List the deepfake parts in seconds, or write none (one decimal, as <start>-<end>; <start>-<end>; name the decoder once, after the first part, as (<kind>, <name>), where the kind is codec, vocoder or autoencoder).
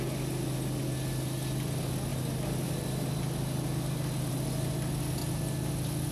none